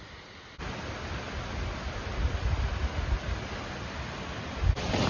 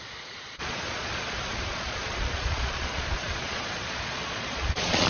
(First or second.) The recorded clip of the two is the first